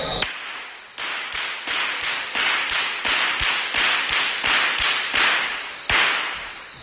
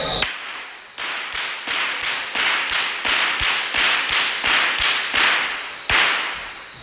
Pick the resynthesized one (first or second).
first